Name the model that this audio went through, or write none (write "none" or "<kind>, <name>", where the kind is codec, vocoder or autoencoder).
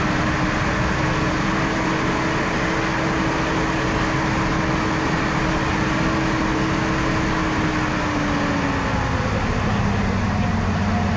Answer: none